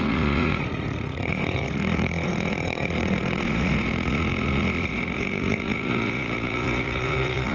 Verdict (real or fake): fake